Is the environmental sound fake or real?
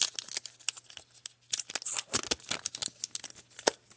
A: real